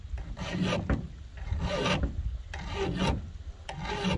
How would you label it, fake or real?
real